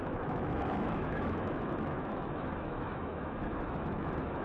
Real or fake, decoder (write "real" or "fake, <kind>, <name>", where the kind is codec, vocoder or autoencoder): fake, autoencoder, DAC-VAE